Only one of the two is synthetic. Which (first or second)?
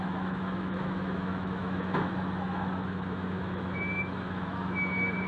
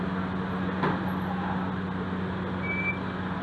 first